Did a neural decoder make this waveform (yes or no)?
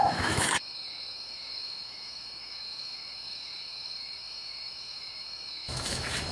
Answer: yes